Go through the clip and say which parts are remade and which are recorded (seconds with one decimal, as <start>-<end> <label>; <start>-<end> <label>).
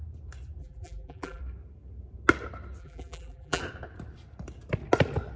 0.0-0.6 recorded; 0.6-1.4 remade; 1.4-2.8 recorded; 2.8-3.6 remade; 3.6-5.4 recorded